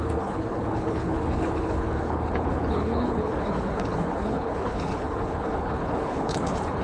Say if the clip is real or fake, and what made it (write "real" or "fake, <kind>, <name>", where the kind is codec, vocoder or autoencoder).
fake, codec, HILCodec